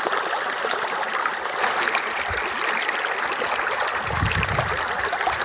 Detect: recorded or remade recorded